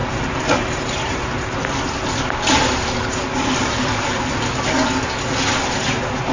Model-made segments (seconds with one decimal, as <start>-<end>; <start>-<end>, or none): 0.0-1.9